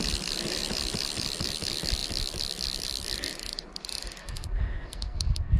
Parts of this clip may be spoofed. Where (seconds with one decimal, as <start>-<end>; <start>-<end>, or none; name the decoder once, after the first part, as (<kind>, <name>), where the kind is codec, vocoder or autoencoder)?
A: 4.2-5.6 (codec, SNAC)

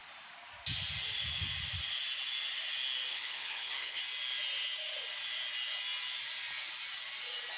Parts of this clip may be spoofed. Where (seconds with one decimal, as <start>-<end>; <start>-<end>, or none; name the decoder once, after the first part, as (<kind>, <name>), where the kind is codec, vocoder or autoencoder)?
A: 3.1-4.0 (codec, HILCodec)

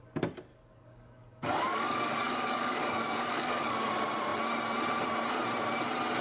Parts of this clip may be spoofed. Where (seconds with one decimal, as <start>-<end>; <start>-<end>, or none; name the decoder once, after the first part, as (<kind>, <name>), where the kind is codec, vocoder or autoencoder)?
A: 0.5-3.9 (codec, DAC)

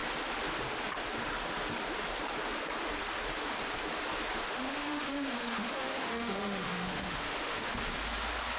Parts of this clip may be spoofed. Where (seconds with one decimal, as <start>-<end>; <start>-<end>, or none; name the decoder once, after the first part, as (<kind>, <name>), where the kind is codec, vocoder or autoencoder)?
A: 4.4-7.7 (autoencoder, DAC-VAE)